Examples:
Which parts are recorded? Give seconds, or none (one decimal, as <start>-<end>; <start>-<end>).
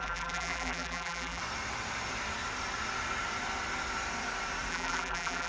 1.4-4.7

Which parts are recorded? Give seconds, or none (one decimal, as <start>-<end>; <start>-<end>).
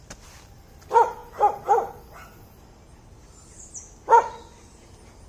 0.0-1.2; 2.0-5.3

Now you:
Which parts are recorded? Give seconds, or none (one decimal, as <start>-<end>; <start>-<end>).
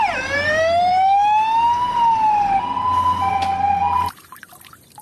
0.9-3.7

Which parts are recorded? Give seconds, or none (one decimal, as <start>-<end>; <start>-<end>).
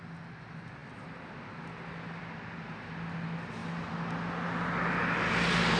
0.0-5.8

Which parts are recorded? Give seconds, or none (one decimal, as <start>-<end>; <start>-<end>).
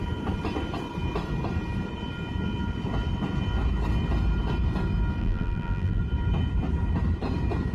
0.0-5.2; 6.0-7.7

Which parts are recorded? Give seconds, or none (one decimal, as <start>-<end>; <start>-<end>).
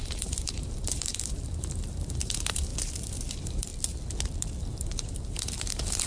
2.7-3.3; 3.7-4.6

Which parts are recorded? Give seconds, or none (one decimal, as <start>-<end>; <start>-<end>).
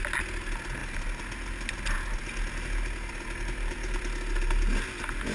0.0-5.3